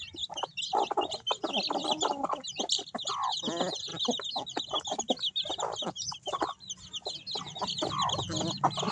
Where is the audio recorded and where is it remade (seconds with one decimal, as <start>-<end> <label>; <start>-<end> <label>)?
0.0-8.9 recorded